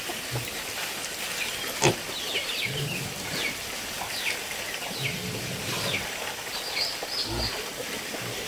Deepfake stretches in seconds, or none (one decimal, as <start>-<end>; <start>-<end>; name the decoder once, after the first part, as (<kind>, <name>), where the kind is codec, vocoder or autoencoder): 2.4-4.0 (vocoder, BigVGAN v2)